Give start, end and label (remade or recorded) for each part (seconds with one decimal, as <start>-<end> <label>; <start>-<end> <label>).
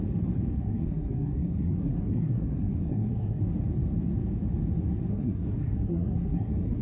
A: 0.0-0.5 recorded; 0.5-3.4 remade; 3.4-5.1 recorded; 5.1-6.8 remade